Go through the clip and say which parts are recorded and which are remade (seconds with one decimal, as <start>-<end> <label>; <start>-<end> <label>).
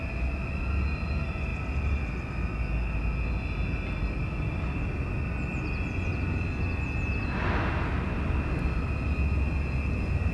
0.0-10.3 recorded